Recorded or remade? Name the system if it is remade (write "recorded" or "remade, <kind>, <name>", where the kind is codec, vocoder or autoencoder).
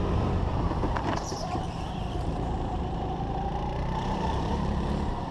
remade, vocoder, BigVGAN v2